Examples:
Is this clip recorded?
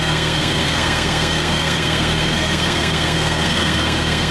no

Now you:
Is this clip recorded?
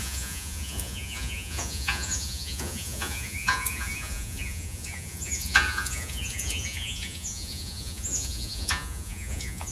no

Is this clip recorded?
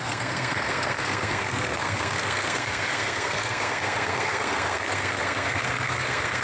no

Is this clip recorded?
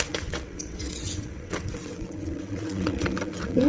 no